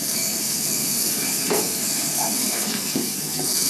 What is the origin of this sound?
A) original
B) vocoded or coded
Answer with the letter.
B